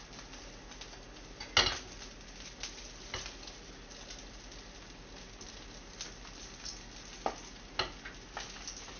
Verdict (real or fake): real